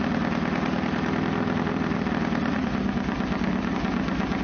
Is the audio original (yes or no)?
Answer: yes